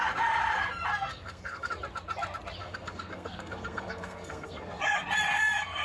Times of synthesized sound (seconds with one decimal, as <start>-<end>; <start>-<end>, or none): 0.9-1.7; 2.6-4.8